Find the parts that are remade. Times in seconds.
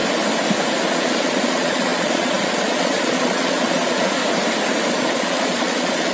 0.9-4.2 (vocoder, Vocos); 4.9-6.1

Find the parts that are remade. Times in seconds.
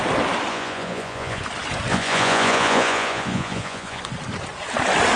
0.5-1.4 (vocoder, Vocos); 1.9-4.0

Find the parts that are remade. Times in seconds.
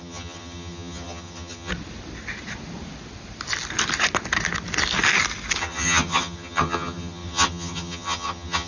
0.0-1.7 (vocoder, HiFi-GAN); 5.6-8.7